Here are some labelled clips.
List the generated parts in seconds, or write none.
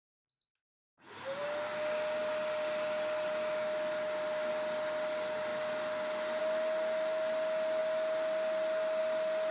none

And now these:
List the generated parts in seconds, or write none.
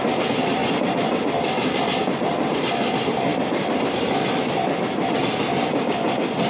0.0-0.6 (vocoder, BigVGAN v2); 1.3-6.5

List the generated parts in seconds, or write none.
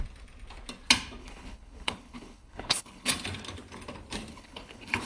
1.2-3.1 (codec, HILCodec); 4.3-5.1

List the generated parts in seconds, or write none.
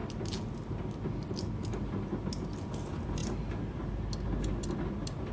none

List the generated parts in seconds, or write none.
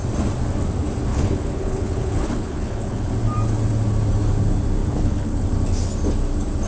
1.1-3.1 (codec, HILCodec); 4.8-5.5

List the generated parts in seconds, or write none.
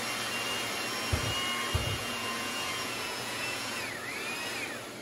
1.8-3.9 (vocoder, Vocos)